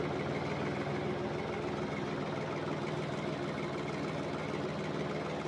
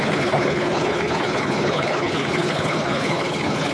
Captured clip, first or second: first